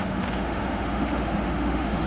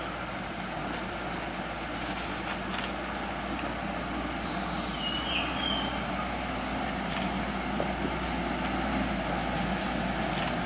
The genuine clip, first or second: second